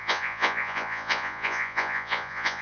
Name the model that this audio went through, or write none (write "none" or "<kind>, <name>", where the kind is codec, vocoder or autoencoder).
vocoder, Vocos